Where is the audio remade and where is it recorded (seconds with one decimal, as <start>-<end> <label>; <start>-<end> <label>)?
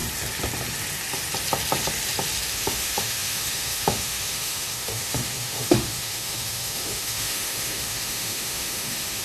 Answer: 0.0-2.5 recorded; 2.5-9.2 remade